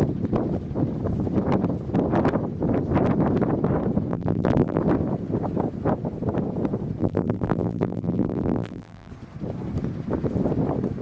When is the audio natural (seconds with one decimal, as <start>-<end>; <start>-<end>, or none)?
0.0-4.1; 4.8-7.0; 9.1-11.0